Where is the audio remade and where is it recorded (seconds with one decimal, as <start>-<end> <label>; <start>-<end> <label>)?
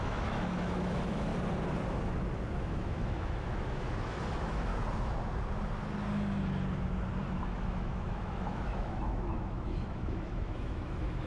0.0-1.3 remade; 1.3-2.6 recorded; 2.6-4.7 remade; 4.7-7.2 recorded; 7.2-11.3 remade